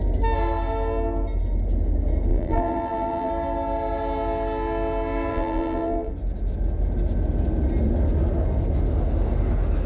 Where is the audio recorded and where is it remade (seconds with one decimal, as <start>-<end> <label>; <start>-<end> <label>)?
0.0-2.3 recorded; 2.3-3.3 remade; 3.3-5.3 recorded; 5.3-6.1 remade; 6.1-9.9 recorded